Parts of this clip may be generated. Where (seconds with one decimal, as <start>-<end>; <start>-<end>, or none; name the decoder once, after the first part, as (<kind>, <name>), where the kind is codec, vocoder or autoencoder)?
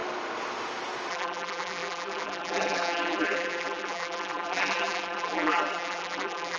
1.1-6.6 (vocoder, BigVGAN v2)